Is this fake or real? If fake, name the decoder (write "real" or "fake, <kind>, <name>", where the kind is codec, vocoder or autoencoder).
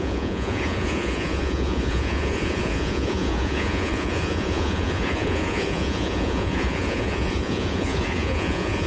fake, vocoder, Vocos